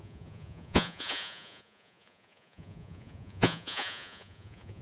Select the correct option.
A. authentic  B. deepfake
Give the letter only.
B